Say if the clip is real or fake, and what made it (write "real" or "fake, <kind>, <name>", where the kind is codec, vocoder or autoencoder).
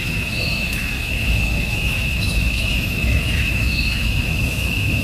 fake, autoencoder, DAC-VAE